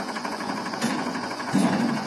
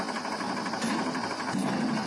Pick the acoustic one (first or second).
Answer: second